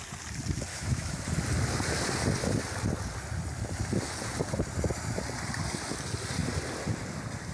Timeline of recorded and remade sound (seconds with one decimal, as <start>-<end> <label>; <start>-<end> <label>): 0.0-0.7 recorded; 0.7-1.2 remade; 1.2-7.5 recorded